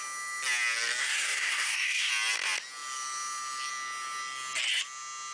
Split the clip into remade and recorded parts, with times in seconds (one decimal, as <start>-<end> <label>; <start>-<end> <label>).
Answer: 0.0-1.0 recorded; 1.0-2.1 remade; 2.1-5.3 recorded